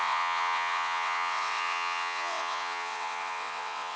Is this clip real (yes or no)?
no